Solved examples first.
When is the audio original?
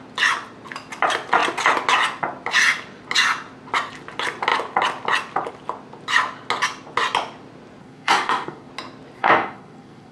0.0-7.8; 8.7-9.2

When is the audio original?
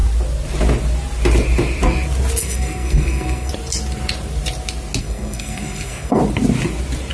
0.0-2.4; 3.5-5.0; 6.2-7.1